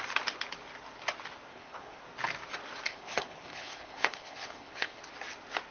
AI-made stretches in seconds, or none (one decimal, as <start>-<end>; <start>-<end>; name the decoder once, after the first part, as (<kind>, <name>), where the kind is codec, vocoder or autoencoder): 1.5-2.0 (codec, HILCodec); 2.9-5.0